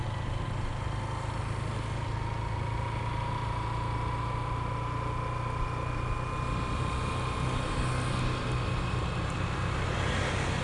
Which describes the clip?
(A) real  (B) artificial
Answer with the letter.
A